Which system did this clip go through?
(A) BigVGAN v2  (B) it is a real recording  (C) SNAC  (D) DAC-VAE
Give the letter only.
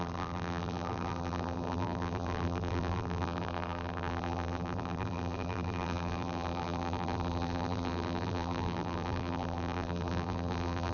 A